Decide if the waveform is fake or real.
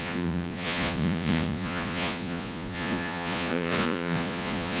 fake